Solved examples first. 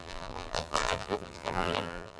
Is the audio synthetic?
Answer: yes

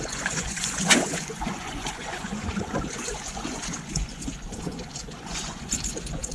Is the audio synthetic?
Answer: yes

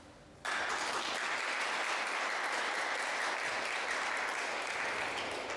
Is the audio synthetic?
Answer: no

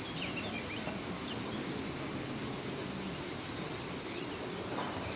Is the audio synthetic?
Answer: no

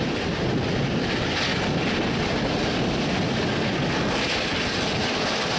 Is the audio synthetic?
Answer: no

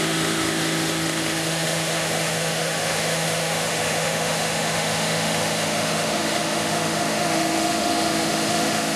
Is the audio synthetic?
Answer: yes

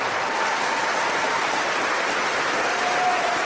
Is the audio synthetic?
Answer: no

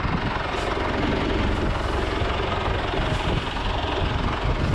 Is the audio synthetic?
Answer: no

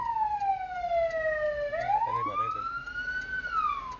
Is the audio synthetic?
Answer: no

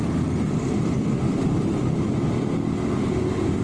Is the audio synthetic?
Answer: no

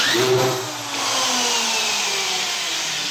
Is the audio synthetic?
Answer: no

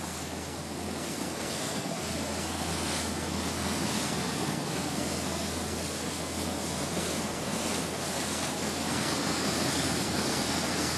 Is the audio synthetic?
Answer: yes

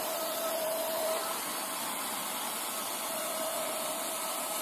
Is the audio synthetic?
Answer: no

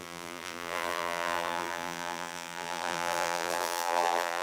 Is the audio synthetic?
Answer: yes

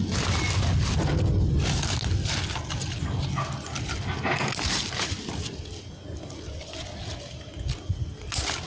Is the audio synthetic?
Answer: no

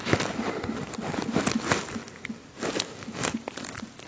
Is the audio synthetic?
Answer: no